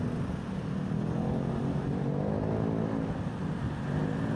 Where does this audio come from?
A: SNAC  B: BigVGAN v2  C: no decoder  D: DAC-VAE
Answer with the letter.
C